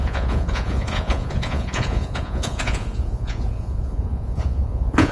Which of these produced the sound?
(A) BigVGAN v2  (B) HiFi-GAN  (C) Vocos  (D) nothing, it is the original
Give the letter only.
C